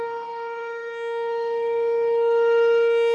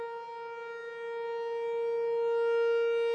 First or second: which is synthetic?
first